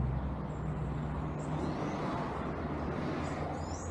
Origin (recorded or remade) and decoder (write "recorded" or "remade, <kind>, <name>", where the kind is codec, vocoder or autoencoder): recorded